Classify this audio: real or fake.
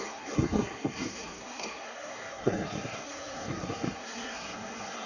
fake